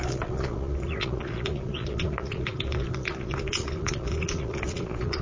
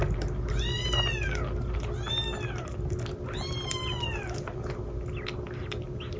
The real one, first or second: second